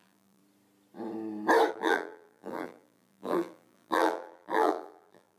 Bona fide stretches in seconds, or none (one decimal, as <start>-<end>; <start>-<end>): 0.4-1.7